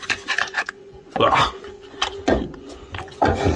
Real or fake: fake